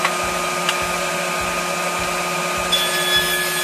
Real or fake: real